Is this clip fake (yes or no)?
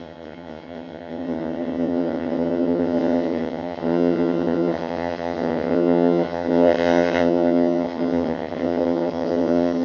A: yes